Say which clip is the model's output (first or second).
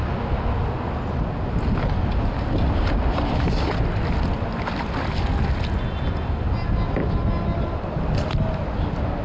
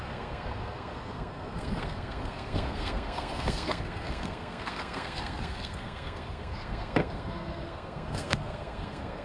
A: second